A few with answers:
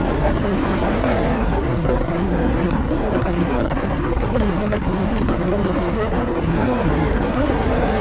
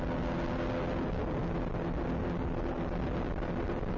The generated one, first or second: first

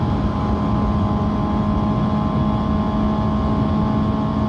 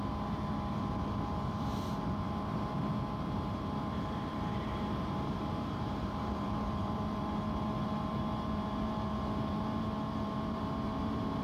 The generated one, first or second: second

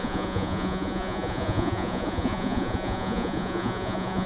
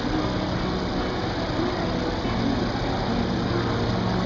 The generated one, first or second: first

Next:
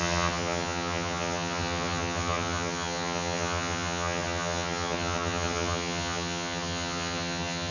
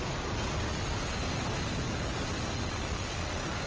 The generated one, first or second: first